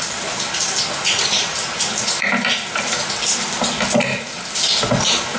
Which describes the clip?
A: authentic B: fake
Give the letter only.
A